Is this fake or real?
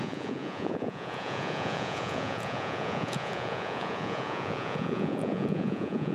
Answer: fake